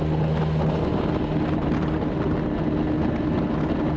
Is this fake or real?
real